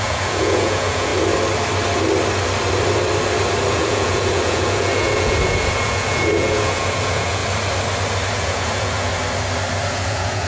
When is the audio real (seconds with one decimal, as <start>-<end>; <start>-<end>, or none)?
1.1-3.7; 7.4-8.3; 9.1-9.9